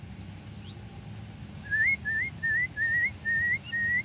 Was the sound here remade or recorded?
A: recorded